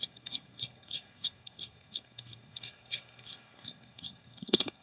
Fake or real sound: fake